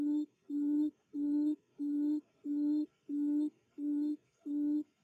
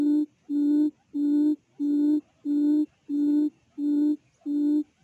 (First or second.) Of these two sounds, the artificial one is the first